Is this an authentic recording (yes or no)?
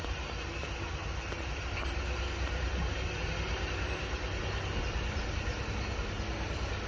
yes